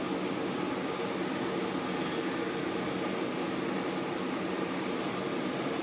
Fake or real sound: real